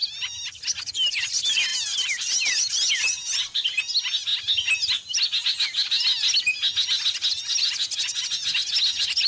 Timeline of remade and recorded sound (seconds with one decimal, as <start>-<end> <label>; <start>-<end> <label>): 0.0-0.6 remade; 0.6-1.7 recorded; 1.7-3.8 remade; 3.8-9.3 recorded

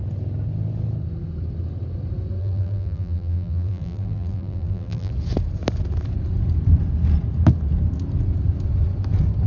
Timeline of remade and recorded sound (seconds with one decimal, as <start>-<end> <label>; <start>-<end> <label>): 0.0-2.4 recorded; 2.4-5.1 remade; 5.1-9.5 recorded

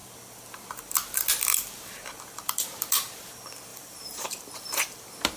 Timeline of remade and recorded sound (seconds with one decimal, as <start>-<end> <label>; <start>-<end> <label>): 0.0-3.7 recorded; 3.7-4.5 remade; 4.5-5.4 recorded

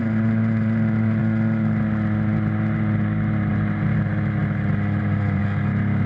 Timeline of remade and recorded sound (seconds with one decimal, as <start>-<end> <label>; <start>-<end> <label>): 0.0-1.2 remade; 1.2-3.5 recorded; 3.5-4.4 remade; 4.4-5.0 recorded; 5.0-5.4 remade; 5.4-6.1 recorded

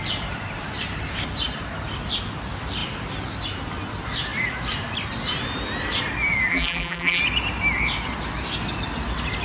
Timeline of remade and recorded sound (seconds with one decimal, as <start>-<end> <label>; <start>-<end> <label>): 0.0-6.5 recorded; 6.5-7.2 remade; 7.2-9.4 recorded

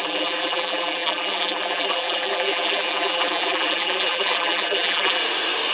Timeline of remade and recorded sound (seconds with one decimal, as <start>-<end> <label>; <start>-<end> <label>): 0.0-5.2 remade; 5.2-5.7 recorded

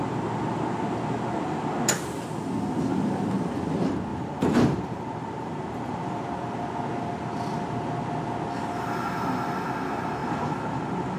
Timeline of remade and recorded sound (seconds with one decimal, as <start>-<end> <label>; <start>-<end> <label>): 0.0-4.1 recorded; 4.1-6.2 remade; 6.2-10.2 recorded; 10.2-11.2 remade